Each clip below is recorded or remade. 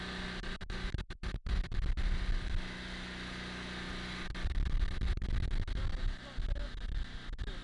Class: recorded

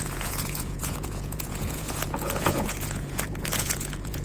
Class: remade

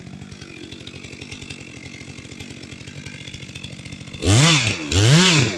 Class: recorded